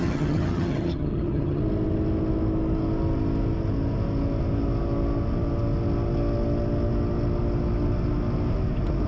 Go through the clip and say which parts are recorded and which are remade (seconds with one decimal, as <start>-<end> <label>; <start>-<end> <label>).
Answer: 0.0-1.6 remade; 1.6-9.1 recorded